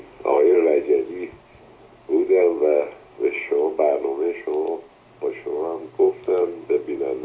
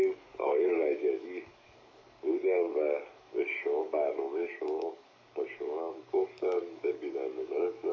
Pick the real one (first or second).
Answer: first